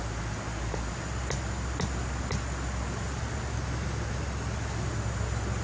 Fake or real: real